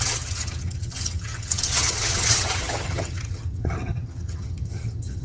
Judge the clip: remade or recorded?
remade